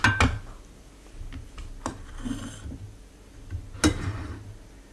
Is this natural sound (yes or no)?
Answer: yes